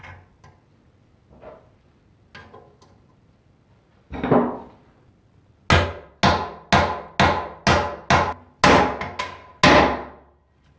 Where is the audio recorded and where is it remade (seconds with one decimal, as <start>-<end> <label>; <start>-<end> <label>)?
0.0-10.8 recorded